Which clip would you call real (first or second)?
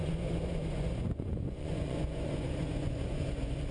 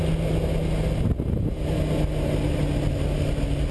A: second